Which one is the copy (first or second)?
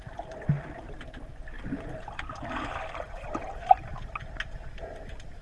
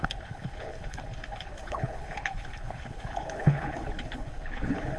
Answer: second